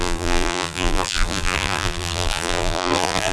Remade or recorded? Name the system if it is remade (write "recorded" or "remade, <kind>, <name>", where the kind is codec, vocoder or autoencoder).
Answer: remade, vocoder, BigVGAN v2